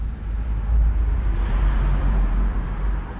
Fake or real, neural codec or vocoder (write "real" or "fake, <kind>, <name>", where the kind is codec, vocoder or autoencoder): fake, vocoder, BigVGAN v2